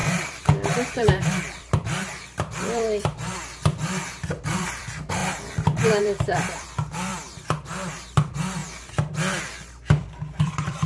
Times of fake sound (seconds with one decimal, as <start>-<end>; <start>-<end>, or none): 0.0-5.2; 6.0-8.6; 10.4-10.9